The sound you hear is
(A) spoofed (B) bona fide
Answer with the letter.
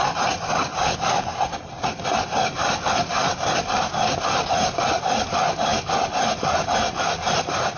B